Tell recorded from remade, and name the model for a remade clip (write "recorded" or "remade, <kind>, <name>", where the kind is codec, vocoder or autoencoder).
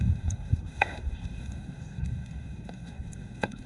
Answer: remade, codec, SNAC